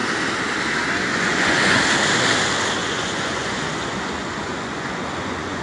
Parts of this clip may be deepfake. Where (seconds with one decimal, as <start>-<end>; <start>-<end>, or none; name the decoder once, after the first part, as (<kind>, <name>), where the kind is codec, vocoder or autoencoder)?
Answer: 1.1-1.8 (vocoder, Vocos); 2.8-5.6